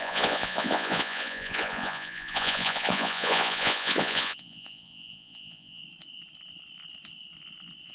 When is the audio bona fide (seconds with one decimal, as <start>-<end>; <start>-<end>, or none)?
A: 5.8-7.9